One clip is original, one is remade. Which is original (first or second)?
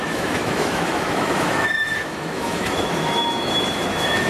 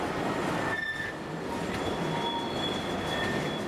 second